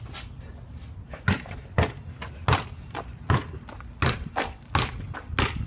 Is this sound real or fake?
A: real